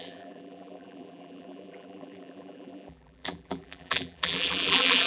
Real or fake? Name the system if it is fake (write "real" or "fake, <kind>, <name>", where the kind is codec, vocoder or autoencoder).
fake, vocoder, BigVGAN v2